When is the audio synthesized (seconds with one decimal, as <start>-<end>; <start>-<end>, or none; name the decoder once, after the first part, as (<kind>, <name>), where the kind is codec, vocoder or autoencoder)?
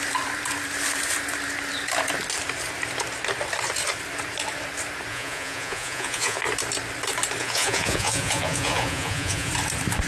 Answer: 5.1-6.4 (vocoder, Vocos); 7.4-9.5